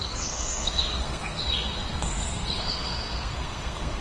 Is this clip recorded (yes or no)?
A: no